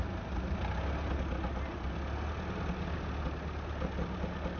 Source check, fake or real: real